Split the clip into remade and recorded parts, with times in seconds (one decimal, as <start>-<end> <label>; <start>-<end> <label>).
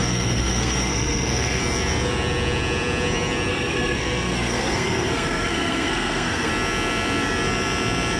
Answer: 0.0-1.6 remade; 1.6-3.5 recorded; 3.5-6.5 remade; 6.5-8.2 recorded